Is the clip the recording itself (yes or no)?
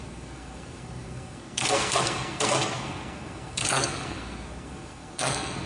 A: no